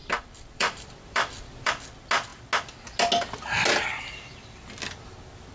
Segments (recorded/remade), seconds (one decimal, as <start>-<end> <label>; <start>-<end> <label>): 0.0-1.7 remade; 1.7-5.5 recorded